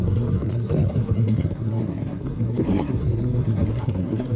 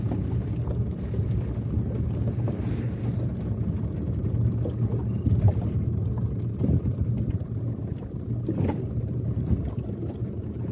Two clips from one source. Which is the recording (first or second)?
second